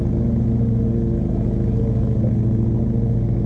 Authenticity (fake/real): real